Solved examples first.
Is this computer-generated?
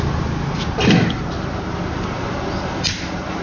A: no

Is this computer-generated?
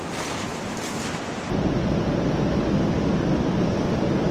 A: no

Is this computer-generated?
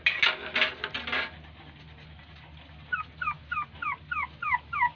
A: no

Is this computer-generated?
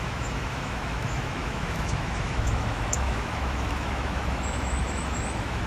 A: yes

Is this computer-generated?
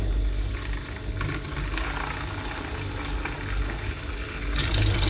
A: no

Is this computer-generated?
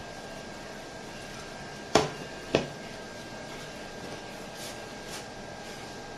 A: no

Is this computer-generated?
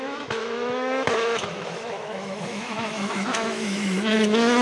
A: yes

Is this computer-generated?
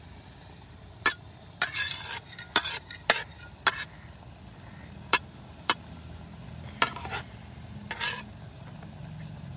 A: no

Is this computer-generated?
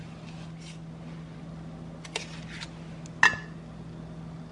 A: no